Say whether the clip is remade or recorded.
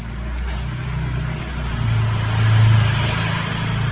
recorded